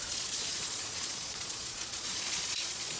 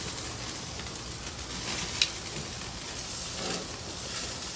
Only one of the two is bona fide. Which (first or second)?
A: second